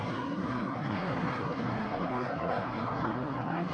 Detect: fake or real fake